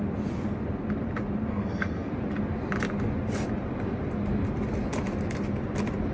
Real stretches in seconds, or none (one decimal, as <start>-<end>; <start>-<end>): 0.0-1.5; 2.1-6.1